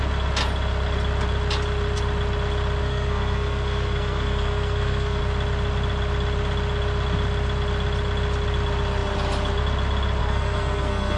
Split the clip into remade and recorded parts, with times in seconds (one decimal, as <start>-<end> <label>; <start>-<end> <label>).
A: 0.0-2.8 recorded; 2.8-5.2 remade; 5.2-10.2 recorded; 10.2-11.2 remade